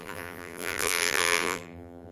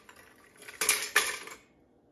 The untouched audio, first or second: second